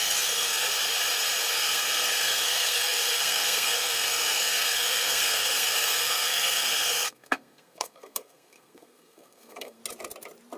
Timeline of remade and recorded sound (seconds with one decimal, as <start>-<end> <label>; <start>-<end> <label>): 0.0-0.7 remade; 0.7-1.5 recorded; 1.5-9.8 remade; 9.8-10.6 recorded